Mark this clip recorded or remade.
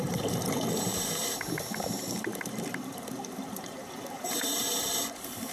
remade